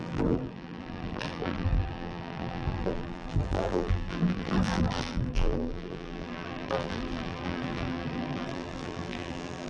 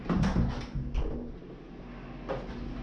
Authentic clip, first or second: second